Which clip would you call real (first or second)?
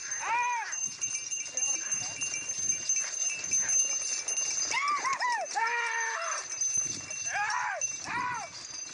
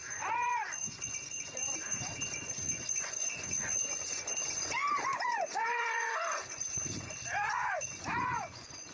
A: first